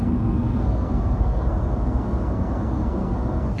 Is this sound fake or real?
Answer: fake